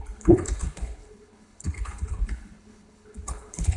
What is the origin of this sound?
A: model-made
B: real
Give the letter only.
A